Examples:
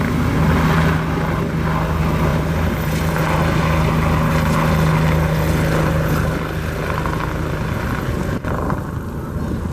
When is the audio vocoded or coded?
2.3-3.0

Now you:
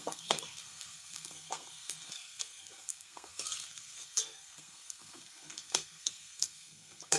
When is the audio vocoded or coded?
0.0-7.2

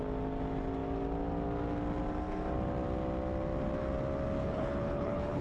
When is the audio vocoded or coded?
4.4-5.4

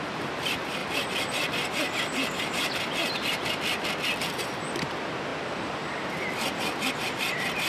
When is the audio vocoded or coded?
0.0-0.8; 4.4-5.3; 6.9-7.7

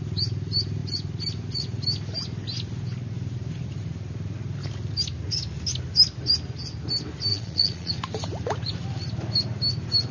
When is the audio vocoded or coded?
7.3-7.9

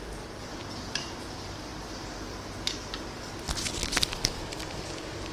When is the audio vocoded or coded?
0.0-1.7; 4.5-5.3